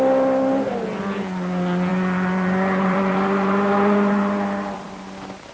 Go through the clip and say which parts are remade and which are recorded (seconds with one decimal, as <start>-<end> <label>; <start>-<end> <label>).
0.0-1.9 recorded; 1.9-4.9 remade; 4.9-5.5 recorded